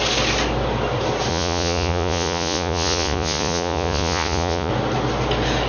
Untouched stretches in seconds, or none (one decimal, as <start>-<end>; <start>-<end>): 0.0-1.3; 4.7-5.7